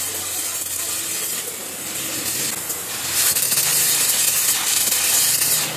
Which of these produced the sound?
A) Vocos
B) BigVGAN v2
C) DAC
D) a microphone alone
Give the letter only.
D